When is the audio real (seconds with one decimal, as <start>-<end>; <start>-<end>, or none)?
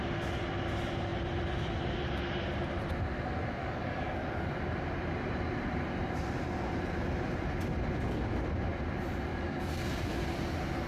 0.0-3.6; 4.5-9.3; 10.2-10.9